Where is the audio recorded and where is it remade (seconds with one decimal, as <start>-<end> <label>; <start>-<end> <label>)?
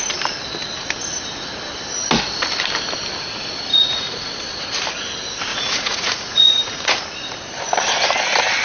0.0-3.7 recorded; 3.7-4.3 remade; 4.3-5.5 recorded; 5.5-7.0 remade; 7.0-8.6 recorded